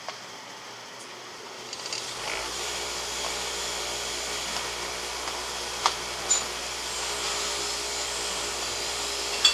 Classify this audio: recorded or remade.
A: recorded